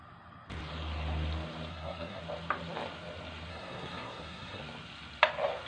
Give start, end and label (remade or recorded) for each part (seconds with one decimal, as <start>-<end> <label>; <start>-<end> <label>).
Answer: 0.0-1.7 recorded; 1.7-2.2 remade; 2.2-3.5 recorded; 3.5-4.6 remade; 4.6-5.7 recorded